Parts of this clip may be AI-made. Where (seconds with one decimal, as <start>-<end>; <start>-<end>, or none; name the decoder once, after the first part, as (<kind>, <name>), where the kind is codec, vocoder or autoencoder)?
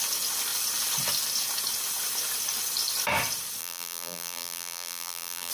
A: 3.6-5.5 (vocoder, BigVGAN v2)